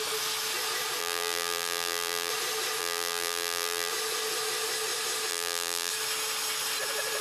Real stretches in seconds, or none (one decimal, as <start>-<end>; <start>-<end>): 0.0-1.0; 2.3-2.8; 3.9-5.3; 5.9-7.2

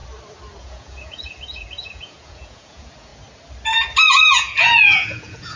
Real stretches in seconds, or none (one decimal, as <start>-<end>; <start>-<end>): 0.0-0.6; 3.1-4.2

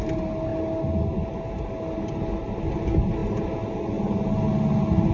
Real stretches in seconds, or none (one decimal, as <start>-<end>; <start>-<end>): 0.0-5.1

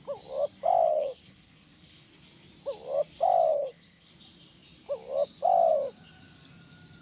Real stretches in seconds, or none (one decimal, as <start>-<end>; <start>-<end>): 0.0-0.9; 2.1-3.5; 4.1-7.0